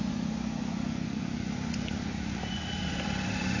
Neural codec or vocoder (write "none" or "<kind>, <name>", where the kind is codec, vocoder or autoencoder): vocoder, Vocos